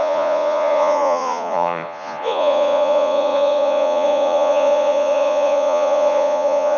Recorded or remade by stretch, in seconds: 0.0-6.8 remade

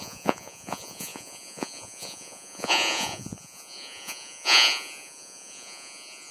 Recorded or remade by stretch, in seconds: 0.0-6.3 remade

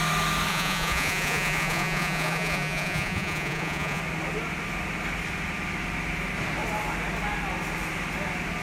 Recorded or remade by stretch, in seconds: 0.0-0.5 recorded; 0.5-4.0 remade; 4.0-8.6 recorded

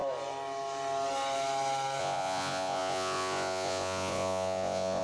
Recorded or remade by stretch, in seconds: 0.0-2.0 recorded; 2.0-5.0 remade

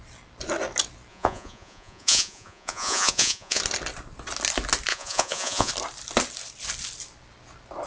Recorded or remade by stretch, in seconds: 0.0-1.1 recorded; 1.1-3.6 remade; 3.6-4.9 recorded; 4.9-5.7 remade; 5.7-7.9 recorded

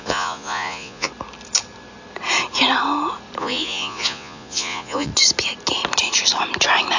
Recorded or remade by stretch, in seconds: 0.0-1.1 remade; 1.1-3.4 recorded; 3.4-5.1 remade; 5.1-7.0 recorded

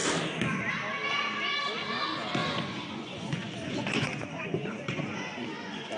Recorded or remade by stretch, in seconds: 0.0-2.4 recorded; 2.4-6.0 remade